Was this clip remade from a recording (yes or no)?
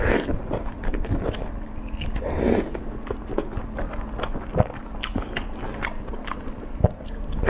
no